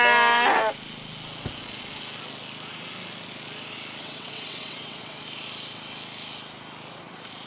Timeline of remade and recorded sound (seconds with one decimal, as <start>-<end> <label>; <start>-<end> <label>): 0.0-4.0 recorded; 4.0-5.2 remade; 5.2-7.5 recorded